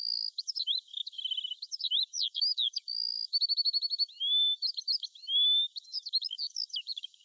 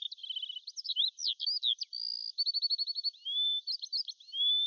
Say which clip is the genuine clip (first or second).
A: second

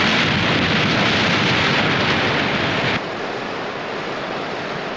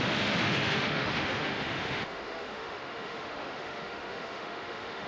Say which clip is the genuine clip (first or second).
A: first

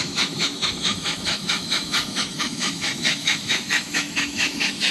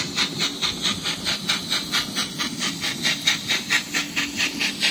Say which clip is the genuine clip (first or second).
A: second